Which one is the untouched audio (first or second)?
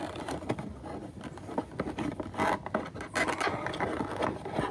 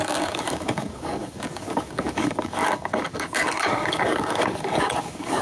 first